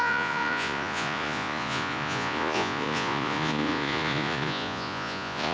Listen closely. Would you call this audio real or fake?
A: fake